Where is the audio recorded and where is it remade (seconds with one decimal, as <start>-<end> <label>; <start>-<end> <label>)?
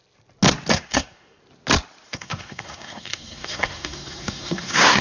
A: 0.0-0.7 recorded; 0.7-1.4 remade; 1.4-2.1 recorded; 2.1-5.0 remade